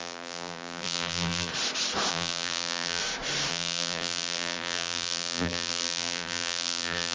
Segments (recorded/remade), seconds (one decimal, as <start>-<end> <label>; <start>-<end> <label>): 0.0-1.5 remade; 1.5-2.1 recorded; 2.1-3.0 remade; 3.0-3.5 recorded; 3.5-7.1 remade